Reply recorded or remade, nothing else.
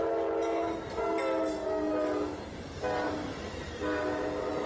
recorded